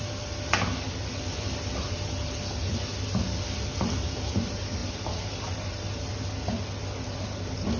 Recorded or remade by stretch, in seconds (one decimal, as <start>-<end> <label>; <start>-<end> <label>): 0.0-7.8 recorded